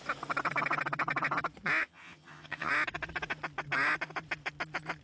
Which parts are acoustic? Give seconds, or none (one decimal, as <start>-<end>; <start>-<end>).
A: 0.0-1.8; 2.7-5.0